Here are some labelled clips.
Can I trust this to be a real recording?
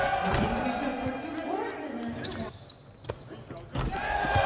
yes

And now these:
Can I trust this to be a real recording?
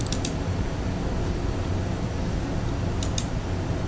yes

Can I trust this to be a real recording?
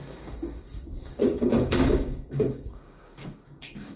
no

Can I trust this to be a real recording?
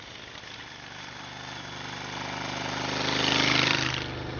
yes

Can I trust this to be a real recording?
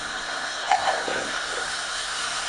no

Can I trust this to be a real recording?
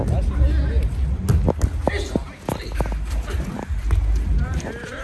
yes